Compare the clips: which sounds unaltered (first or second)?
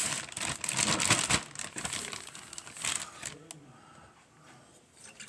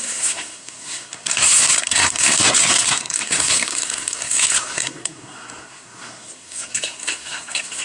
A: first